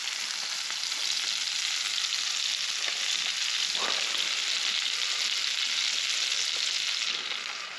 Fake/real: real